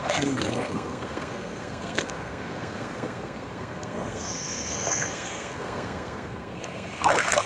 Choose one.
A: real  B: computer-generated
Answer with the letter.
B